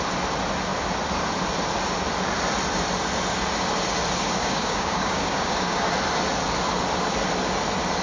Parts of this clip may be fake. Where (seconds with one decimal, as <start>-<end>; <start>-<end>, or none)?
4.4-5.9